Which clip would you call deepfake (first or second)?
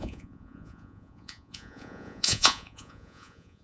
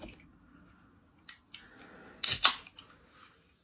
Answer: first